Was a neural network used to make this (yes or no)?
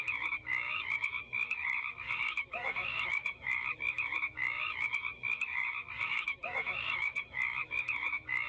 yes